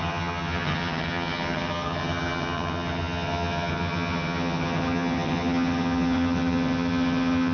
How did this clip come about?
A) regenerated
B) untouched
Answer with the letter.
A